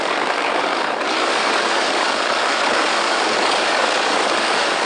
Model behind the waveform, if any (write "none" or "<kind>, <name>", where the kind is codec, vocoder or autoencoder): codec, DAC